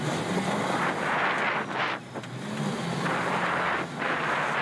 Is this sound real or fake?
real